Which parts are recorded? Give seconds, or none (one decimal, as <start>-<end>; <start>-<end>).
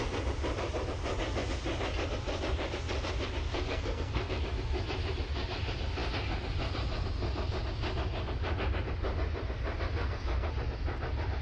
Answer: 0.0-3.5; 4.4-10.0; 10.5-11.4